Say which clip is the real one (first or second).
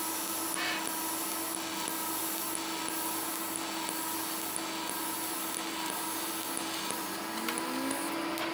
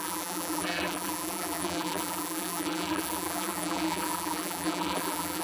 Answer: first